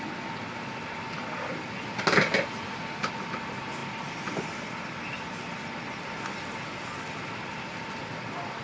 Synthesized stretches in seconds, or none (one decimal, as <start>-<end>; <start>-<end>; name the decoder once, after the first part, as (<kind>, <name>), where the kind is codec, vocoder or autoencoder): none